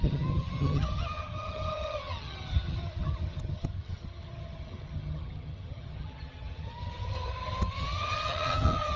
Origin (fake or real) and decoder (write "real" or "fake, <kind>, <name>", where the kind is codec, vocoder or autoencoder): fake, vocoder, HiFi-GAN